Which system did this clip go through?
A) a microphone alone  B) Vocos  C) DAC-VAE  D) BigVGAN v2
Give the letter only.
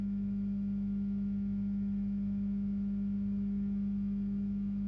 C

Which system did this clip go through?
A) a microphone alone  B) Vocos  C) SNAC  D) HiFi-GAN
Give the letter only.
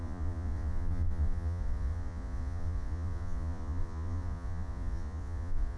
B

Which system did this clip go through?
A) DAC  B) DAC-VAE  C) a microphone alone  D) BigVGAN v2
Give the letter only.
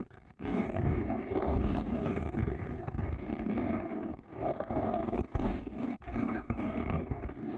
A